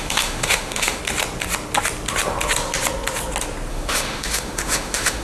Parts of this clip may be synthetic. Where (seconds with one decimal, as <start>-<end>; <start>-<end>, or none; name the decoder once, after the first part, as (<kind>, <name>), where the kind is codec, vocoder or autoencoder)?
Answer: 0.0-1.0 (autoencoder, DAC-VAE); 3.7-5.2